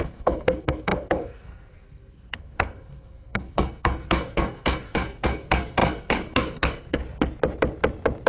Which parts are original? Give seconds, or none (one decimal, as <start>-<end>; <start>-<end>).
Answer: 7.0-8.3